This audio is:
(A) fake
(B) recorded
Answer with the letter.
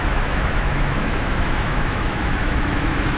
A